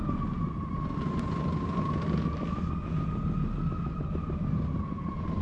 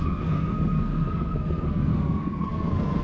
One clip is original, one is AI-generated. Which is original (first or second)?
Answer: first